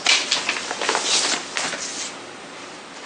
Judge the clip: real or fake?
real